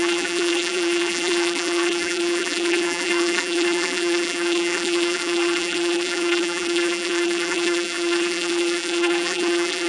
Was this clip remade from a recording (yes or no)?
yes